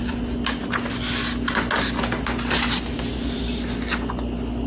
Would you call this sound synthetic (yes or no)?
no